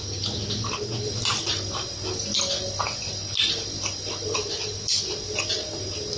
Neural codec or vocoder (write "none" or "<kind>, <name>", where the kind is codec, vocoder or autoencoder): none